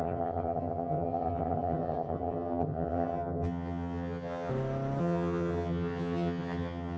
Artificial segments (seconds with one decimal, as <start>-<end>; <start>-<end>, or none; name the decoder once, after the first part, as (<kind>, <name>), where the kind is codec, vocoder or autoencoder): 0.0-4.5 (vocoder, HiFi-GAN); 5.0-7.0